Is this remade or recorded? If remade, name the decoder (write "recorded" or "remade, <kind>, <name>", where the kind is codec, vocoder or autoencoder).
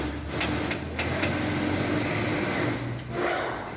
recorded